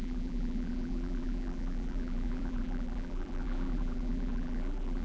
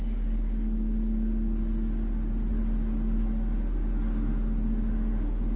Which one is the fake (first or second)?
first